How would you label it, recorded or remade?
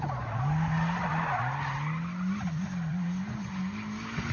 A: recorded